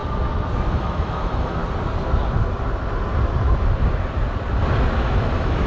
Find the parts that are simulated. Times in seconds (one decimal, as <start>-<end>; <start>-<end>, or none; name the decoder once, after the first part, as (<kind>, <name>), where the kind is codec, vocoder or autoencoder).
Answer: 0.7-1.6 (autoencoder, DAC-VAE); 5.0-5.7